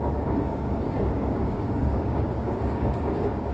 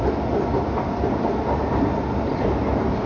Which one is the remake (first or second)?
first